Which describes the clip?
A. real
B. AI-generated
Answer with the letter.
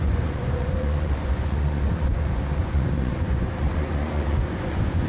B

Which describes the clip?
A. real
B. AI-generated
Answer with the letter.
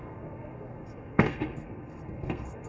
B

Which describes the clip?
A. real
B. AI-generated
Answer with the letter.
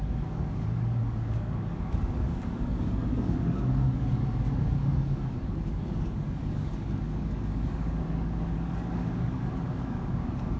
B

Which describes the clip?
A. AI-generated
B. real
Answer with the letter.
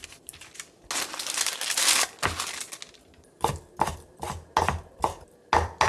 B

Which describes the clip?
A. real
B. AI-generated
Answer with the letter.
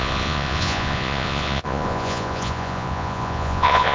B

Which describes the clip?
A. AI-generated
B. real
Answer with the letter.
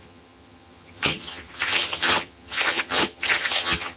A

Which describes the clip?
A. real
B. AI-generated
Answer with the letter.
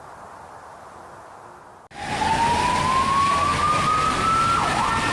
A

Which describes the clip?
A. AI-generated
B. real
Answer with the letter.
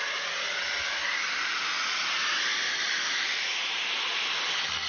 A